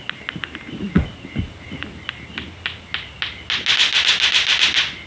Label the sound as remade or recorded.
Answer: recorded